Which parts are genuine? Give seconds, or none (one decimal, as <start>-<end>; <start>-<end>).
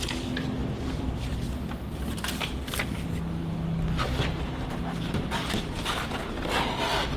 0.0-0.6; 1.1-7.2